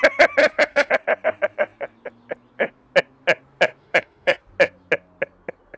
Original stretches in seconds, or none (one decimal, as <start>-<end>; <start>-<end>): 0.0-0.4; 0.9-3.8; 4.4-5.8